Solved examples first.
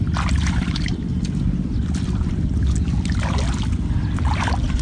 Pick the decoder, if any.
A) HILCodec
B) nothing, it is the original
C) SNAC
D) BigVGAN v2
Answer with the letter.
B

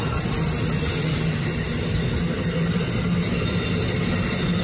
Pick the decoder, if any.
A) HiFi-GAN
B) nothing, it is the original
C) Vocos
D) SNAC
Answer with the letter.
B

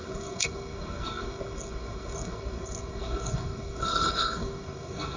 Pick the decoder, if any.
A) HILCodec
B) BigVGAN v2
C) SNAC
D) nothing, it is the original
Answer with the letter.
C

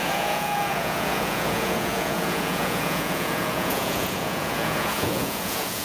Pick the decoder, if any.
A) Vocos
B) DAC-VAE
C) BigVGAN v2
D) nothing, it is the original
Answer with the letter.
A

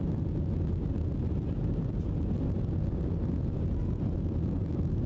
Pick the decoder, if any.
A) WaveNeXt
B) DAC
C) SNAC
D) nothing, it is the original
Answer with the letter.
D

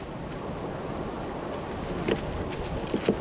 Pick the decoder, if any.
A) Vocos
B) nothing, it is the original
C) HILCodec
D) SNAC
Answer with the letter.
B